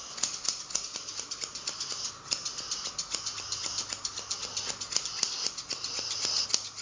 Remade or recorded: recorded